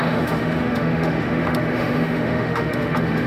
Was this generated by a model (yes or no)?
yes